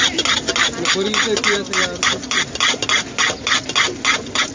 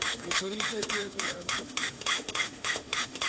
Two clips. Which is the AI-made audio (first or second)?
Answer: second